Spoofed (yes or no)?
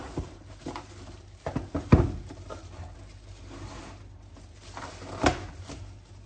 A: no